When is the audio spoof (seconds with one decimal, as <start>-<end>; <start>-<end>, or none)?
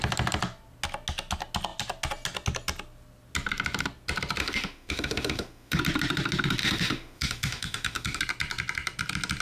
4.4-5.8; 6.6-8.2